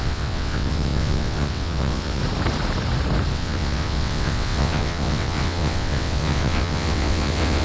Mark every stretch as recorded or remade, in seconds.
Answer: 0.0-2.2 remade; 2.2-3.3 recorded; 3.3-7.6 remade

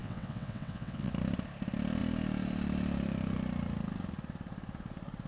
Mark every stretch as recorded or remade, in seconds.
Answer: 0.0-1.1 remade; 1.1-5.3 recorded

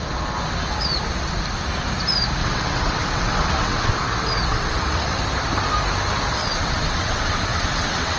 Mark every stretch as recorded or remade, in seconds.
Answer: 0.0-2.4 recorded; 2.4-3.9 remade; 3.9-4.5 recorded; 4.5-5.2 remade; 5.2-6.4 recorded; 6.4-8.2 remade